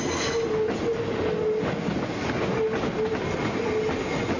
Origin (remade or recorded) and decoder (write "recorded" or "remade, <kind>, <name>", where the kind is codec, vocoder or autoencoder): recorded